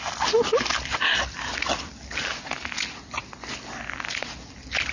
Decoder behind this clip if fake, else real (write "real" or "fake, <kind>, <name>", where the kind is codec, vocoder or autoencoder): real